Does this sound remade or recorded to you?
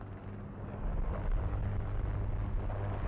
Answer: recorded